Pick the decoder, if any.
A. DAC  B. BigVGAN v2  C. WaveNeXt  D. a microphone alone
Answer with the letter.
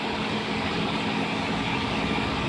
A